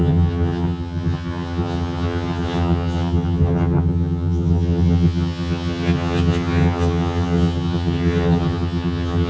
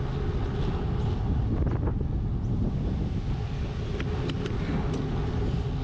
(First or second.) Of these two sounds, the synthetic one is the first